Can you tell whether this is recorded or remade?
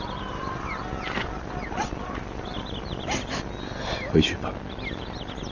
recorded